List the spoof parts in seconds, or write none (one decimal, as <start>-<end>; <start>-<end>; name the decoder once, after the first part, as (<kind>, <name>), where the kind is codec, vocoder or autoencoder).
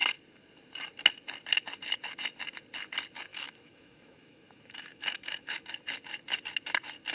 3.3-5.7 (autoencoder, DAC-VAE)